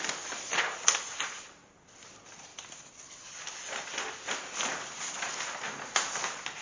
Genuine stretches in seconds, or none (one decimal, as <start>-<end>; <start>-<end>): 0.0-2.5; 3.5-6.6